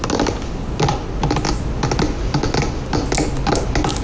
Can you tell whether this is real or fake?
real